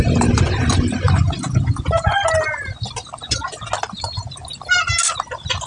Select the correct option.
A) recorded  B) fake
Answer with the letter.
A